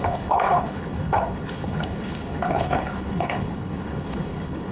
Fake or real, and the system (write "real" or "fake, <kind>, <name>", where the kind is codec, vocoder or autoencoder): fake, codec, HILCodec